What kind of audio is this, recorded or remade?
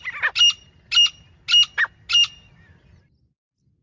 recorded